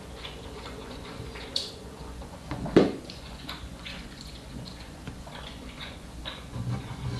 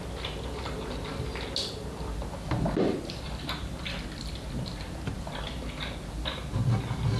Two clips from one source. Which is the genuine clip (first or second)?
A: second